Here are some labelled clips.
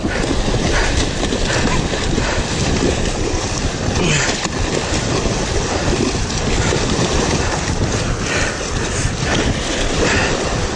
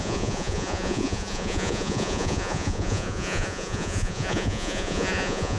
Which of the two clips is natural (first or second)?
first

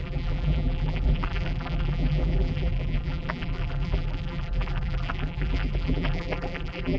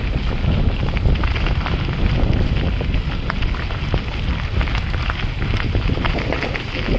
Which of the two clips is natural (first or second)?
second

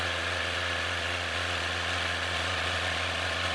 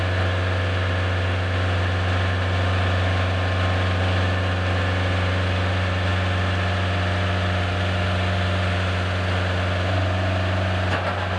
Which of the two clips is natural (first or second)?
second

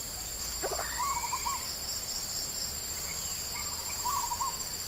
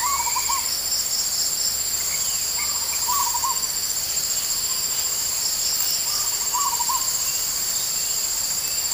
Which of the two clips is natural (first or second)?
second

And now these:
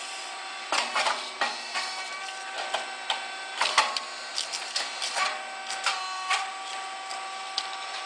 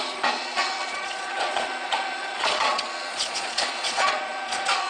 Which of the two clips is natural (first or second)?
first